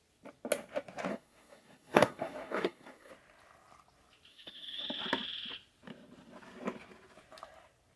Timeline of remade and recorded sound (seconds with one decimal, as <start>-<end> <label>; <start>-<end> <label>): 0.0-1.1 recorded; 1.1-3.1 remade; 3.1-4.3 recorded; 4.3-4.8 remade; 4.8-8.0 recorded